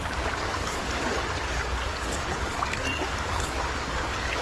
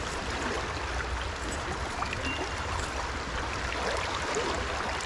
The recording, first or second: second